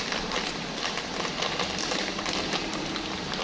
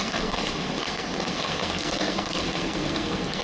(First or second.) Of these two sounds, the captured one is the first